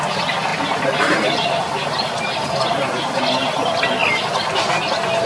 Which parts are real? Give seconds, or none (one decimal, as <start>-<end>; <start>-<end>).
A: 0.0-0.5; 3.2-5.3